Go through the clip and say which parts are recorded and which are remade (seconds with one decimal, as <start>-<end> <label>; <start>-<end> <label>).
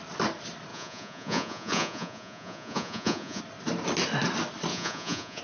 0.0-0.7 recorded; 0.7-3.4 remade; 3.4-4.7 recorded; 4.7-5.4 remade